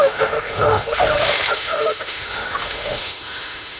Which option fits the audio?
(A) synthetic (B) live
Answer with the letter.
A